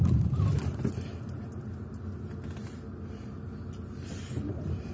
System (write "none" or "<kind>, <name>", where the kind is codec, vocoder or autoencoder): none